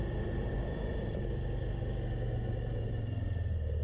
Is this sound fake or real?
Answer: real